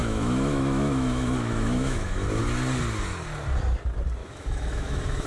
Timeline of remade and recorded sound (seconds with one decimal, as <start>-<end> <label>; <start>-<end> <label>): 0.0-2.4 remade; 2.4-4.2 recorded; 4.2-5.3 remade